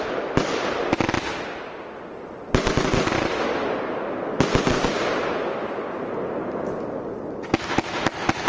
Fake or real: real